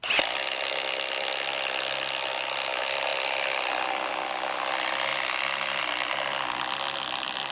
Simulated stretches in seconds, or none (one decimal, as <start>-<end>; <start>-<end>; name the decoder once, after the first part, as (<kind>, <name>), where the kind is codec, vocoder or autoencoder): none